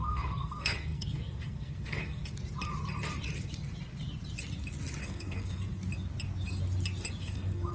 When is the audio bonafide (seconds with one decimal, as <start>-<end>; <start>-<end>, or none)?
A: 2.2-5.0; 5.8-7.2